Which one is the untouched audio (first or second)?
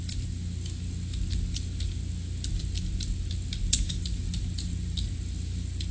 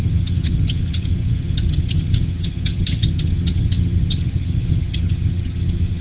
first